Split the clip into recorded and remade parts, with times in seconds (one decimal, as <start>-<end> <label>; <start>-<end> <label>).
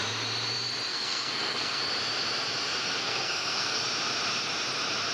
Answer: 0.0-0.9 recorded; 0.9-1.8 remade; 1.8-2.8 recorded; 2.8-3.8 remade; 3.8-5.1 recorded